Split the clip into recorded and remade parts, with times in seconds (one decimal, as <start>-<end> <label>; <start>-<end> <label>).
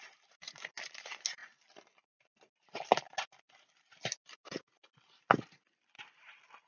0.0-6.7 recorded